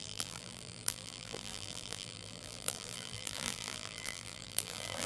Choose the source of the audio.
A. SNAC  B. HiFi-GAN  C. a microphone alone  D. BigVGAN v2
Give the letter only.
D